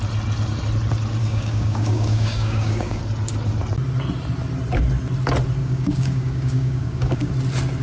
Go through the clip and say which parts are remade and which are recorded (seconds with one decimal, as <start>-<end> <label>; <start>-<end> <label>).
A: 0.0-1.2 recorded; 1.2-3.0 remade; 3.0-5.6 recorded; 5.6-7.3 remade; 7.3-7.8 recorded